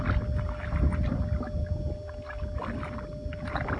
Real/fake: real